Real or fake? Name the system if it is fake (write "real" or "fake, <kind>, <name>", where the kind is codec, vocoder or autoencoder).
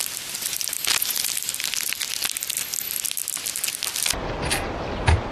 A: real